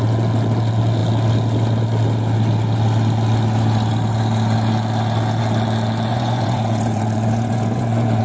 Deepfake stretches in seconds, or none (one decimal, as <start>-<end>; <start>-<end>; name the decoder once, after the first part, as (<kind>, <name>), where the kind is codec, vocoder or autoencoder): 6.1-8.2 (vocoder, Vocos)

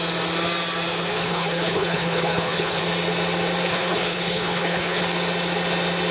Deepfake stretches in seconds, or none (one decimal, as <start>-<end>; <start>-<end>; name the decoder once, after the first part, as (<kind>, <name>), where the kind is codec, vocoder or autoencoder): 1.1-2.8 (codec, HILCodec); 3.7-5.0

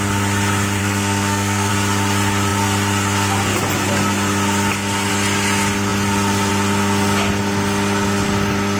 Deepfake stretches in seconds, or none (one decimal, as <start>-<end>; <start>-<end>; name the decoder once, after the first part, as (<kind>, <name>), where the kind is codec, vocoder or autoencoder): 0.8-1.7 (codec, SNAC)

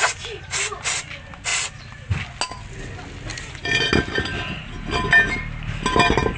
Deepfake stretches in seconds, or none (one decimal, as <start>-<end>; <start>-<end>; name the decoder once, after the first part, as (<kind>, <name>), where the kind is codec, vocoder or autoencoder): none